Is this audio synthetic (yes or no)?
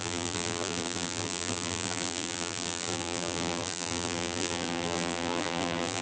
yes